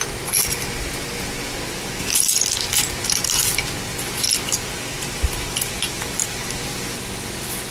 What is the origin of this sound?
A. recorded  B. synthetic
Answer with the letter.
A